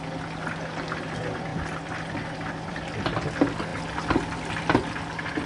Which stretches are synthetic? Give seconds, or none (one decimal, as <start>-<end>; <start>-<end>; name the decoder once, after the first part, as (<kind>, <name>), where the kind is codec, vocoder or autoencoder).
none